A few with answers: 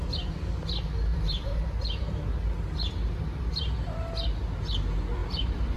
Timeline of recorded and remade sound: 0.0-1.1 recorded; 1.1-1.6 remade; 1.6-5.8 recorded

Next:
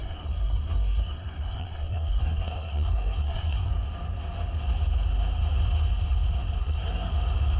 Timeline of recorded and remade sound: 0.0-3.7 remade; 3.7-6.6 recorded; 6.6-7.1 remade; 7.1-7.6 recorded

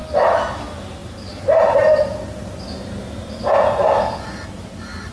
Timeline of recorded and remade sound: 0.0-5.1 recorded

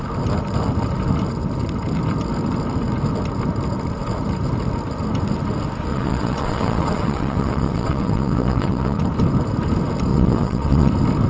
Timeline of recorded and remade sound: 0.0-5.9 recorded; 5.9-9.0 remade; 9.0-10.1 recorded; 10.1-10.9 remade; 10.9-11.3 recorded

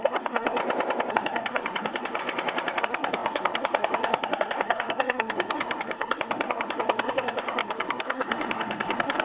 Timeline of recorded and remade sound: 0.0-0.6 remade; 0.6-1.1 recorded; 1.1-2.2 remade; 2.2-2.8 recorded; 2.8-9.2 remade

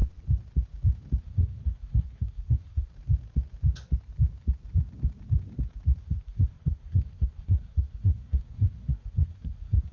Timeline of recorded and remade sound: 0.0-1.2 recorded; 1.2-2.9 remade; 2.9-6.0 recorded; 6.0-9.9 remade

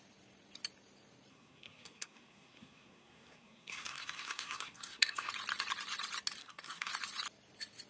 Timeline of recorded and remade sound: 0.0-1.3 recorded; 1.3-5.3 remade; 5.3-6.4 recorded; 6.4-6.9 remade; 6.9-7.9 recorded

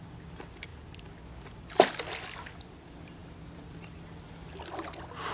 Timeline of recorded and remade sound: 0.0-5.3 recorded